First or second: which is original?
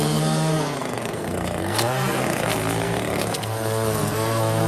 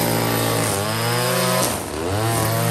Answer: second